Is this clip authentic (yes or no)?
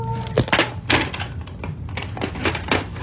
yes